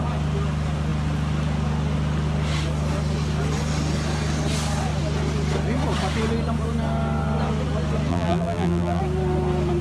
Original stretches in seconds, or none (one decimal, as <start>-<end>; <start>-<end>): 0.0-8.1; 9.0-9.8

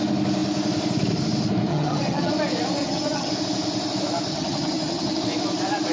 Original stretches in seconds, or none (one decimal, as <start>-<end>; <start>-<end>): 0.0-1.7; 2.3-2.8; 3.3-4.3; 5.2-5.9

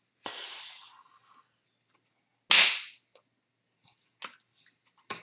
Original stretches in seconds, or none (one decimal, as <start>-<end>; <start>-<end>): 0.0-5.2